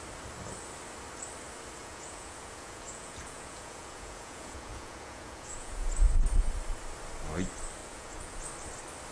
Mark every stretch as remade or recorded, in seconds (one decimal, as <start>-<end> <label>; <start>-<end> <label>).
0.0-1.8 recorded; 1.8-5.9 remade; 5.9-7.8 recorded; 7.8-8.4 remade; 8.4-9.1 recorded